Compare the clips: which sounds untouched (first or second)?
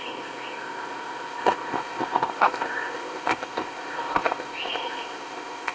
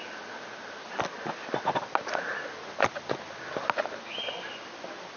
second